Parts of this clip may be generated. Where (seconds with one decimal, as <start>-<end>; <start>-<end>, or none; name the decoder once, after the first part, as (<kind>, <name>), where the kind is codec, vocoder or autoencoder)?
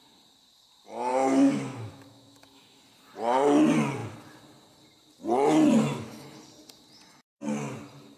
1.1-2.8 (autoencoder, DAC-VAE)